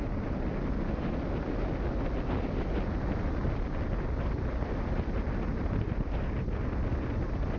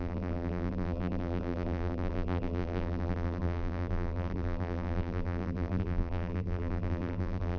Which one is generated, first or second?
second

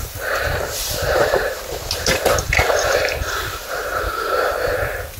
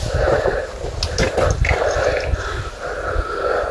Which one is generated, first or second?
first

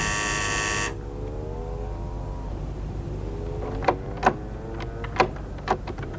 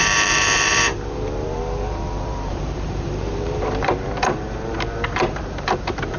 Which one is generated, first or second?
second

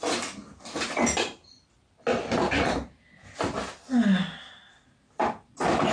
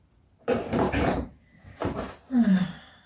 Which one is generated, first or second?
second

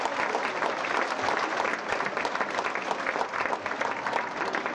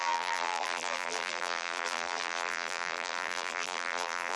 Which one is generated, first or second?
second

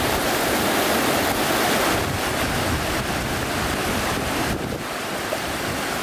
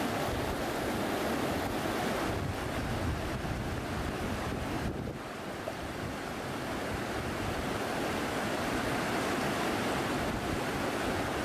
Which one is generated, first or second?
first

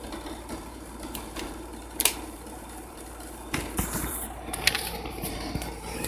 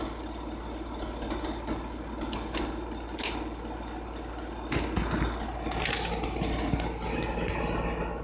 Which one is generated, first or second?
first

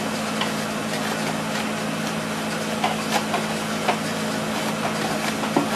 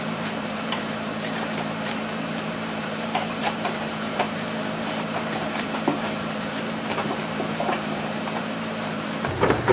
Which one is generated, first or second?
second